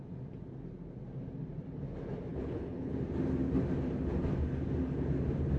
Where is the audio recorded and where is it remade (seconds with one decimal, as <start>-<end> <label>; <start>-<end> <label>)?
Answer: 0.0-2.3 recorded; 2.3-3.0 remade; 3.0-5.6 recorded